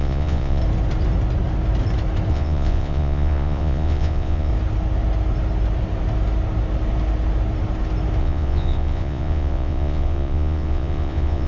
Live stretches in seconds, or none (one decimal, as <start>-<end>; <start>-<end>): 0.6-2.3; 4.5-8.2